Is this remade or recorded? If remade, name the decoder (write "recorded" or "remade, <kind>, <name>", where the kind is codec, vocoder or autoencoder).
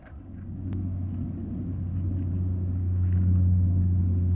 recorded